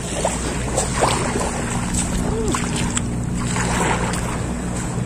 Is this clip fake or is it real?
real